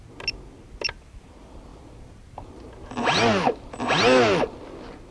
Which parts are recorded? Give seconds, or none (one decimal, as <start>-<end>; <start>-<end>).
0.0-5.1